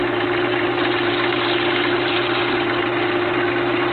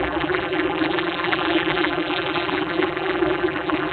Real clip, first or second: first